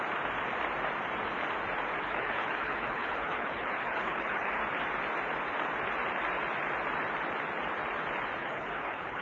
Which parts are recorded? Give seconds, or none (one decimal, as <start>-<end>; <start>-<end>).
0.0-1.9; 4.6-8.4